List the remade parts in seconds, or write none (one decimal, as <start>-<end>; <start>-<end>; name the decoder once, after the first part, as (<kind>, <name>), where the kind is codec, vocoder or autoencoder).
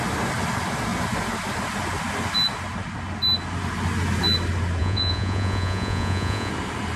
4.8-6.5 (vocoder, Vocos)